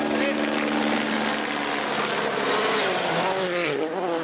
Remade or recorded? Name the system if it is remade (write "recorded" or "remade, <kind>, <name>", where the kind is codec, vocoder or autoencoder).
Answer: recorded